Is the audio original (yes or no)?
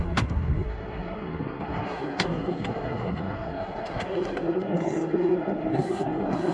no